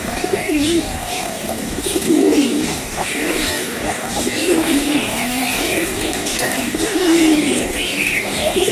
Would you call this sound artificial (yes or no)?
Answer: yes